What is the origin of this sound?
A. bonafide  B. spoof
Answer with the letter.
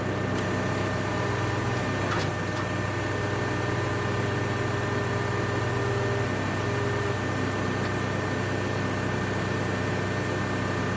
A